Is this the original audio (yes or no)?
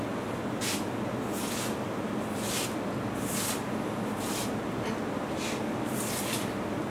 yes